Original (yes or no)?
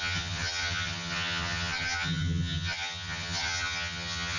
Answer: no